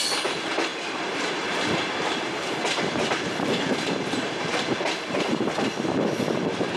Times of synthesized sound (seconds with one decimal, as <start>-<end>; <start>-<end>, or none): 0.7-4.8